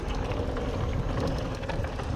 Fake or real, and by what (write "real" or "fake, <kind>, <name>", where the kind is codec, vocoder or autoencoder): real